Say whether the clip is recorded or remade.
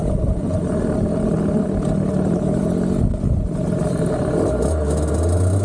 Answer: recorded